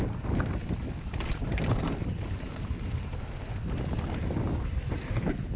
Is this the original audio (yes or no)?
yes